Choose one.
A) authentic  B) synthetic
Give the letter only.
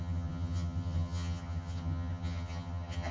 B